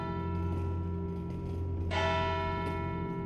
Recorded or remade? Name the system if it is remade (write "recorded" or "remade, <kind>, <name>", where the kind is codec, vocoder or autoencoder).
recorded